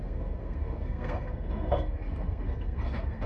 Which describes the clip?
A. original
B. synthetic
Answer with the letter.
B